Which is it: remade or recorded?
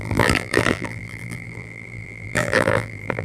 remade